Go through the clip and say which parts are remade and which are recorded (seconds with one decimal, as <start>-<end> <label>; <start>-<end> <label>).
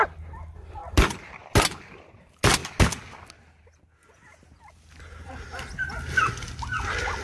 0.0-7.2 recorded